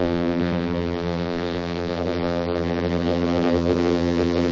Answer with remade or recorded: remade